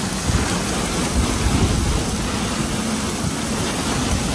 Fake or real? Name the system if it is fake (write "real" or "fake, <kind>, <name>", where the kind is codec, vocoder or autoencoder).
real